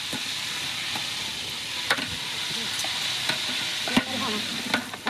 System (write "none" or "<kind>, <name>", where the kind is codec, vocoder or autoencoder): none